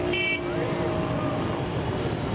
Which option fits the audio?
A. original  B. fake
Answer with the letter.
A